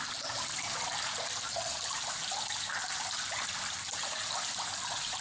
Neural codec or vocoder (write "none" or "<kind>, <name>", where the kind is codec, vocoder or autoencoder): none